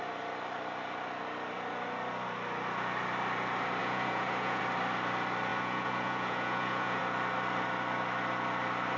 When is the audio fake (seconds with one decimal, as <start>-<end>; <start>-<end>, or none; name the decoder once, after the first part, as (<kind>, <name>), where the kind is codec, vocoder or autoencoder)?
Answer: 3.8-4.6 (vocoder, Vocos); 5.5-7.0